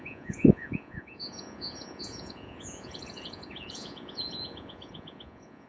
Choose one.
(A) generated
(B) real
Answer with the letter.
A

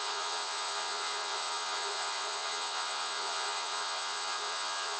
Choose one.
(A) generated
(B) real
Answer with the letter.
A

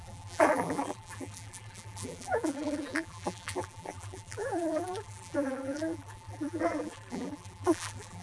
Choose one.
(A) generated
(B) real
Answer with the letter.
A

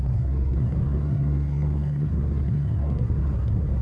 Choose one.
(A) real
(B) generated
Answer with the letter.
B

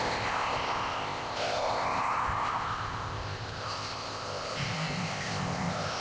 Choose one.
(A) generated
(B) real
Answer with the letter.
A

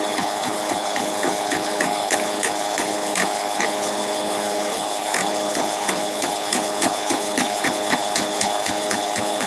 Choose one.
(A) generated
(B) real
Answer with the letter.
A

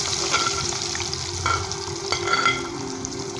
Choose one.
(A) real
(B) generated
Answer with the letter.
B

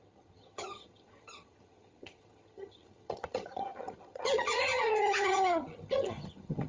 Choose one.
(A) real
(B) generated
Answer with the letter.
B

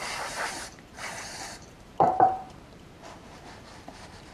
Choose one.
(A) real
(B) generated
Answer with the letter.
B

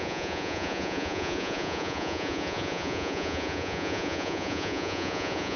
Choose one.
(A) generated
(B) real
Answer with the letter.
A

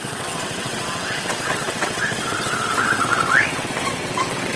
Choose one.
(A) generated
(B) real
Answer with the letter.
A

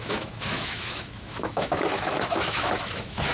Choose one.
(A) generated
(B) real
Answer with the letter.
A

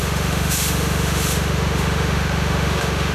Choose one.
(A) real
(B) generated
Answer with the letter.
B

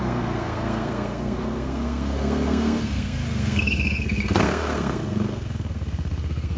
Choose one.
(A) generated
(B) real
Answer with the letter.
A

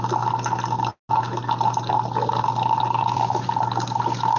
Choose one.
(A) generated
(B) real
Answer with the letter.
B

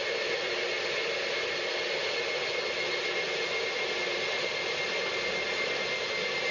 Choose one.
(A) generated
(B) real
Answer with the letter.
B